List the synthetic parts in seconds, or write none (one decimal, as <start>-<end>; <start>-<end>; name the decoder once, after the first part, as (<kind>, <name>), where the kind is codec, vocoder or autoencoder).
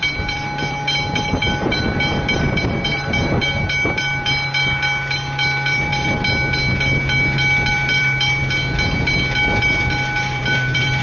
0.0-5.9 (vocoder, BigVGAN v2); 7.7-8.4; 9.6-11.0